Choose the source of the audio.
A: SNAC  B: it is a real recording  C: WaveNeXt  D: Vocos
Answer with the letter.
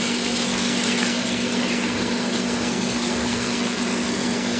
A